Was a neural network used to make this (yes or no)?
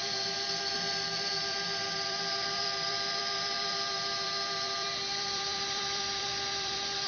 yes